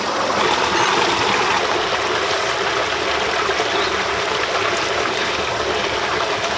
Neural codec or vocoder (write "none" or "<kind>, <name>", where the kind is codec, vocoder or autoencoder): none